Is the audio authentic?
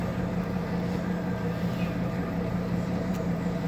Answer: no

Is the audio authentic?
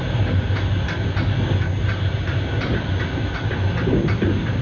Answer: yes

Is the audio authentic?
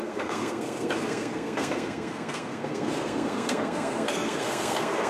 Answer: no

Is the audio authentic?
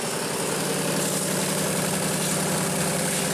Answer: yes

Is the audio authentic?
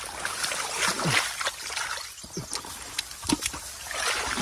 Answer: yes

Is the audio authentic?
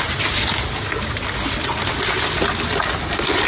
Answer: yes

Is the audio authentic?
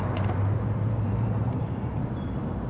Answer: no